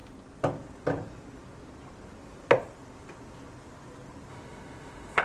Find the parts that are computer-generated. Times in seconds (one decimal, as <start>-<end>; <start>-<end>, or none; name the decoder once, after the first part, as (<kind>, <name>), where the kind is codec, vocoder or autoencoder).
4.3-5.2 (autoencoder, DAC-VAE)

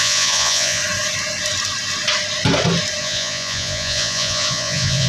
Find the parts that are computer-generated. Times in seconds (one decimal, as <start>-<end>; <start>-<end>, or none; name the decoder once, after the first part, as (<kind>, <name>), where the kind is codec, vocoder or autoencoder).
0.0-0.8 (vocoder, Vocos); 3.0-5.1

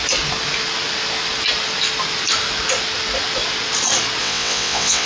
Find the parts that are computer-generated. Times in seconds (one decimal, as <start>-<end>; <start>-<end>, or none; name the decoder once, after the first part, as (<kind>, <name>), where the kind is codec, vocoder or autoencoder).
4.2-5.1 (vocoder, WaveNeXt)

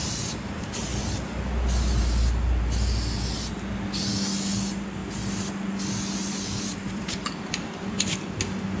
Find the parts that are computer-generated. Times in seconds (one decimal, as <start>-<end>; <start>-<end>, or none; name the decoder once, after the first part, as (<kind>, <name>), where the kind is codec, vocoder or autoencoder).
none

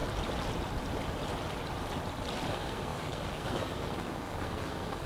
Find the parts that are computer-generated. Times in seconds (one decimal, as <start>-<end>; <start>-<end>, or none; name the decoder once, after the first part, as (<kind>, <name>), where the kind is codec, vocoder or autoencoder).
2.5-5.1 (codec, SNAC)